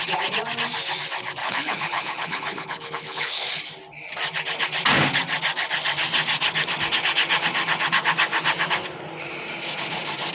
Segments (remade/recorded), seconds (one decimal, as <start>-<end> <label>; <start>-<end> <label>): 0.0-1.4 recorded; 1.4-3.6 remade; 3.6-10.3 recorded